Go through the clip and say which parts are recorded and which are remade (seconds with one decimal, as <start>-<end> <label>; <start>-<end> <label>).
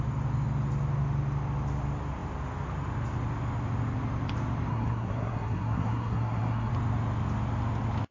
0.0-4.7 recorded; 4.7-6.7 remade; 6.7-8.1 recorded